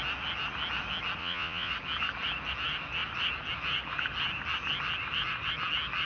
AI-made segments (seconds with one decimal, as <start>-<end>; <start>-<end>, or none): 1.2-1.7